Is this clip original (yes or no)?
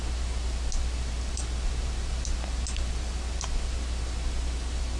yes